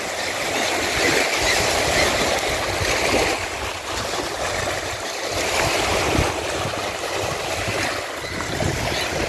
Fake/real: real